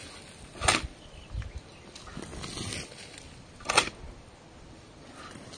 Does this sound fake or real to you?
real